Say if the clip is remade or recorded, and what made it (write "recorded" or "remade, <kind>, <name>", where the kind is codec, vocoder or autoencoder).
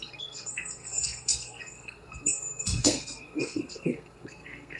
remade, codec, SNAC